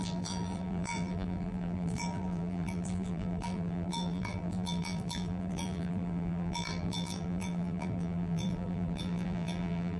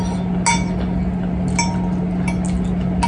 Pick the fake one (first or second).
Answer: first